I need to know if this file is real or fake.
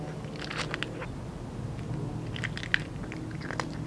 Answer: real